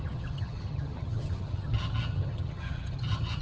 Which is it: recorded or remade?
remade